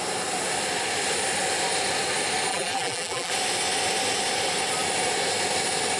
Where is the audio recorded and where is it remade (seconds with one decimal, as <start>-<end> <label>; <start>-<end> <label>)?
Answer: 0.0-2.5 recorded; 2.5-3.3 remade; 3.3-6.0 recorded

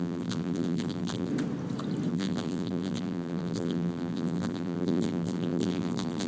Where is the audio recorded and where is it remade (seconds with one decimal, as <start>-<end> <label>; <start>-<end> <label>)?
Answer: 0.0-1.3 remade; 1.3-2.1 recorded; 2.1-6.3 remade

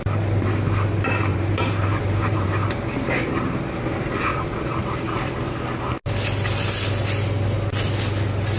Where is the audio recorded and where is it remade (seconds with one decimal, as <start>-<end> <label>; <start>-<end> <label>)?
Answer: 0.0-1.3 recorded; 1.3-2.5 remade; 2.5-4.3 recorded; 4.3-5.6 remade; 5.6-8.6 recorded

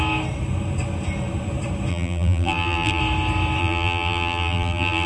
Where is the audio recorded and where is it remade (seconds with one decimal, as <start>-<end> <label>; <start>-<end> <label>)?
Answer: 0.0-1.9 recorded; 1.9-3.0 remade; 3.0-3.6 recorded; 3.6-5.1 remade

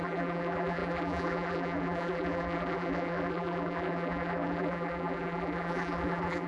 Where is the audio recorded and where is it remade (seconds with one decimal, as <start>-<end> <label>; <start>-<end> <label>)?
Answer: 0.0-6.5 remade

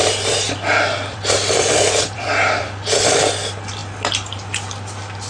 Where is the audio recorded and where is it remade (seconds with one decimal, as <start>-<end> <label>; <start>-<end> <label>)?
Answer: 0.0-3.2 remade; 3.2-5.3 recorded

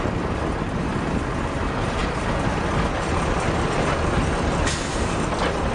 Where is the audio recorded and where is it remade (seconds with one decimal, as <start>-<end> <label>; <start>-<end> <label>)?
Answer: 0.0-2.0 recorded; 2.0-5.7 remade

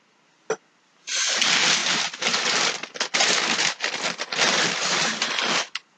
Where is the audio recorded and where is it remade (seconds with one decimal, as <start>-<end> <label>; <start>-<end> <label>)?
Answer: 0.0-1.8 recorded; 1.8-5.4 remade; 5.4-6.0 recorded